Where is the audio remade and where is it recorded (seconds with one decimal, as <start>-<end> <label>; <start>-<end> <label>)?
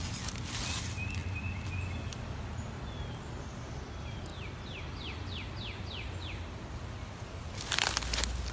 0.0-8.5 recorded